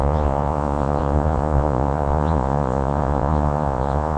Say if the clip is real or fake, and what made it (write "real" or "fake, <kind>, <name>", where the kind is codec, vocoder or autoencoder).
fake, vocoder, Vocos